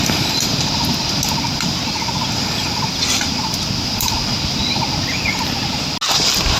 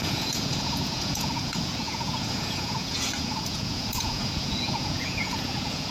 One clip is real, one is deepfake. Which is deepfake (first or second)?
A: second